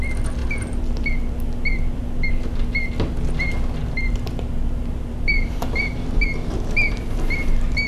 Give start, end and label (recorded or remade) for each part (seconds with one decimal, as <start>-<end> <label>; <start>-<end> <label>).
0.0-5.3 recorded; 5.3-5.9 remade; 5.9-7.9 recorded